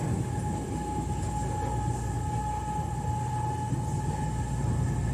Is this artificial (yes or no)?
no